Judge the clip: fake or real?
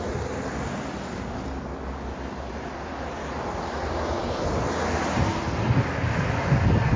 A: real